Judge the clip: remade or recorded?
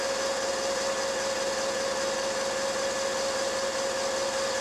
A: recorded